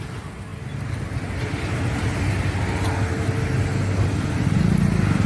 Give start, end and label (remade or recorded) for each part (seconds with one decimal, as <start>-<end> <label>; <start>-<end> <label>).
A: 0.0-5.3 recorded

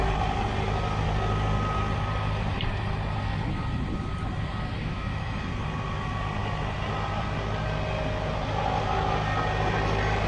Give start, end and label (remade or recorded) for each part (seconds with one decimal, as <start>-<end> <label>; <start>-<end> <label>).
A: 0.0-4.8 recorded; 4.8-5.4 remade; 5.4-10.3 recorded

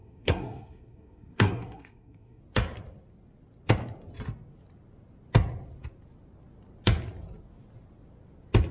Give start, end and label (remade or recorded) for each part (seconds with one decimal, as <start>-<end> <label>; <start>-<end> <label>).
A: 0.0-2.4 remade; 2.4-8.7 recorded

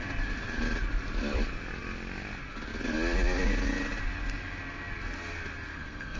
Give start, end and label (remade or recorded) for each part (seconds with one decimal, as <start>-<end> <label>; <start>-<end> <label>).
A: 0.0-5.7 recorded; 5.7-6.2 remade